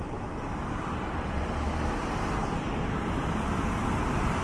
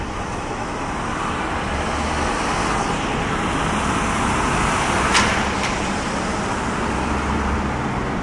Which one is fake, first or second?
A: first